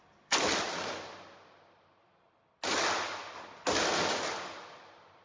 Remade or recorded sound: recorded